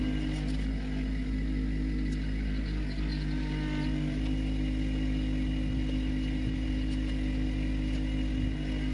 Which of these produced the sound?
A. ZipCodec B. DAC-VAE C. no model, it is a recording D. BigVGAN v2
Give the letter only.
C